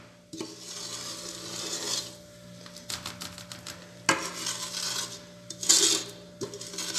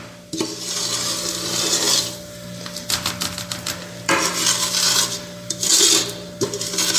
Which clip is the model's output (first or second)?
second